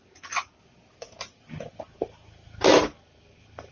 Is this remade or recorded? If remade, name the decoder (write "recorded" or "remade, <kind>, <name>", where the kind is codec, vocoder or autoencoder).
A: recorded